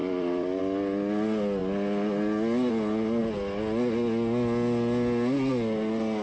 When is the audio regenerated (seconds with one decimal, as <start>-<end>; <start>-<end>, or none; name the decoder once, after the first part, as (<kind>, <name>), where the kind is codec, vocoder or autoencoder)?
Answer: 0.0-0.6 (vocoder, BigVGAN v2)